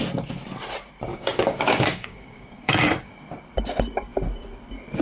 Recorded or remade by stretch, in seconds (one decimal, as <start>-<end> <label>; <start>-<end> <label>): 0.0-1.1 recorded; 1.1-3.1 remade; 3.1-5.0 recorded